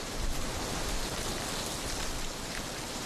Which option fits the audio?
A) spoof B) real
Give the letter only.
A